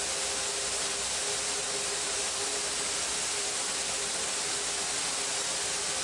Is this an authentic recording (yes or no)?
yes